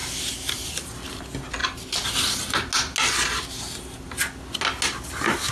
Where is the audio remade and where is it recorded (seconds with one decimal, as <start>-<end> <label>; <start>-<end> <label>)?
0.0-5.5 recorded